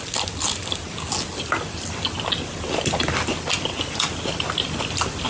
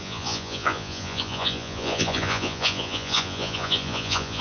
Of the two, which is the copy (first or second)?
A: second